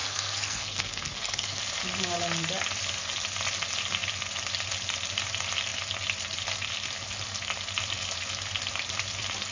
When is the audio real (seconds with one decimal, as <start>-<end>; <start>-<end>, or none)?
1.6-9.5